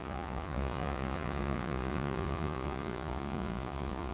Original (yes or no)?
no